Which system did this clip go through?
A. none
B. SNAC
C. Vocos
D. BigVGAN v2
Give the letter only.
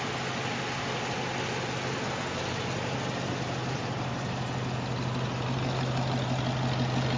A